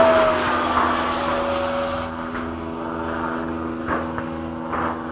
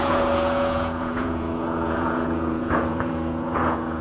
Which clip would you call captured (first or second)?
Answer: first